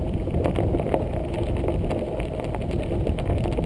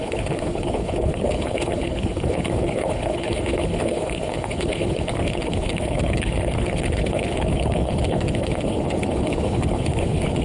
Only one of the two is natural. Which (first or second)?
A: first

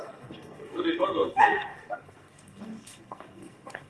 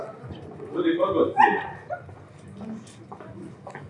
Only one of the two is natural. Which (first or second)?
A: second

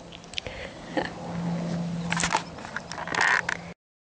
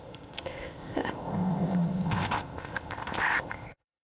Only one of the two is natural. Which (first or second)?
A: first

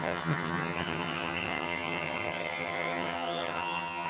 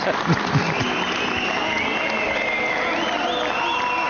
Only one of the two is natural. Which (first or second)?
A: second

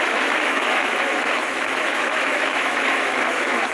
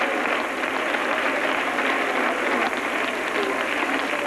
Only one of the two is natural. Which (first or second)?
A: second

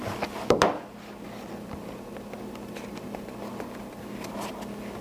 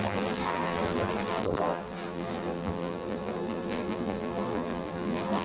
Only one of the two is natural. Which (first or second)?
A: first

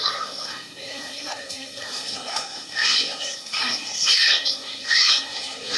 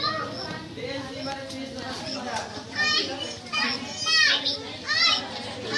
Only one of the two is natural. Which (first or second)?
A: second